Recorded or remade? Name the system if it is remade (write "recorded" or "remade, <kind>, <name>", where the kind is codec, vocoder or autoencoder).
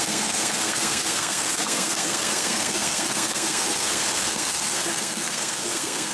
remade, codec, SNAC